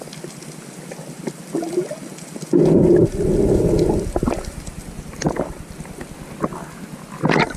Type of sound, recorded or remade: recorded